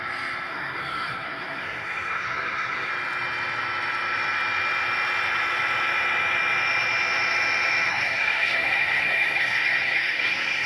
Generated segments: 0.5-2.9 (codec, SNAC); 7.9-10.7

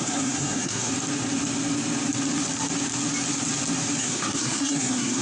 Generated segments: 0.0-0.9 (codec, SNAC); 4.0-5.2

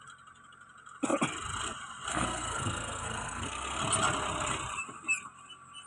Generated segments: 2.1-3.8 (codec, SNAC)

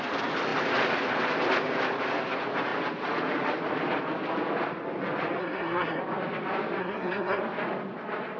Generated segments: 5.4-6.0 (codec, SNAC); 6.8-7.4

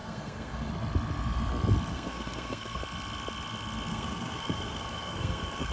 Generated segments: 0.0-0.7 (codec, SNAC); 1.9-2.8; 3.9-5.7

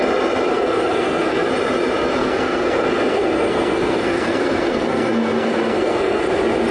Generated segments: 0.5-1.5 (codec, SNAC); 2.2-6.2